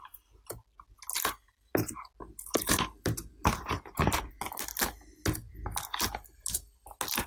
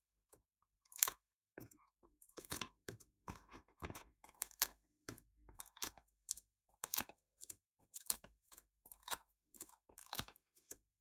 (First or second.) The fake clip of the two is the second